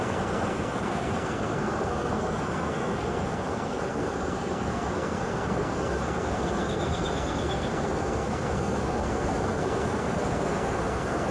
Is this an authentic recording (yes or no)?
no